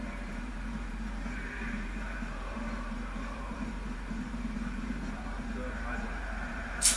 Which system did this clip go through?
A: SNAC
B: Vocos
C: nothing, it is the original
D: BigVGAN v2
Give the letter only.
D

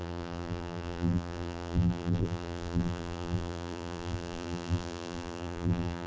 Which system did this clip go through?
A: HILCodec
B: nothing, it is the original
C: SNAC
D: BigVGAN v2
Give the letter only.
D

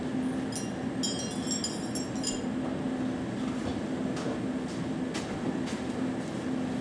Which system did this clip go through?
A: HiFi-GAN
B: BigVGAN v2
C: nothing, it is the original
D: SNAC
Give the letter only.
C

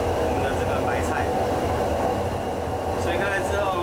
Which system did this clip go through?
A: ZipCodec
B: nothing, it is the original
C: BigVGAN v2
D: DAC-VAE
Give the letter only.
B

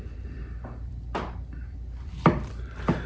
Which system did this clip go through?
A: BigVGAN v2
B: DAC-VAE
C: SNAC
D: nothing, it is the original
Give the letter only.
A